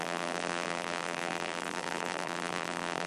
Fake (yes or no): yes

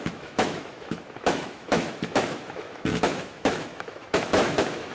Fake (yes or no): yes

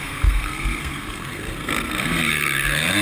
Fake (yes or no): yes